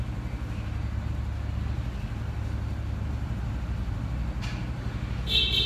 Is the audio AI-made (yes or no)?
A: no